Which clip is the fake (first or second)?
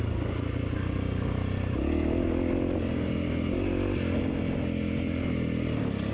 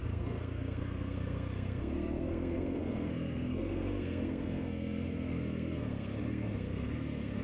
second